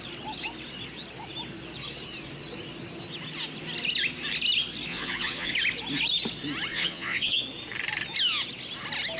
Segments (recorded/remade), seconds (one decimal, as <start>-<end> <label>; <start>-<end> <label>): 0.0-4.9 recorded; 4.9-5.5 remade; 5.5-6.7 recorded; 6.7-7.4 remade; 7.4-9.2 recorded